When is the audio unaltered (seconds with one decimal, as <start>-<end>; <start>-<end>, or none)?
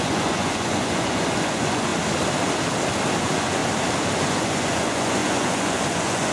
1.9-3.2; 3.6-4.2